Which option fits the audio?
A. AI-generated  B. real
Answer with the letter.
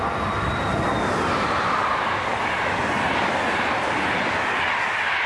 B